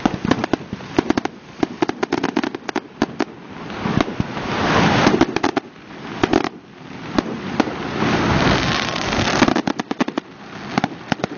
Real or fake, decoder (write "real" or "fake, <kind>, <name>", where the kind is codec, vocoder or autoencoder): real